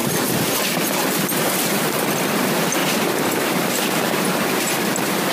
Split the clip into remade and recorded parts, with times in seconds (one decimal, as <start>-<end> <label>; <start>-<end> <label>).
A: 0.0-2.8 recorded; 2.8-3.8 remade; 3.8-5.3 recorded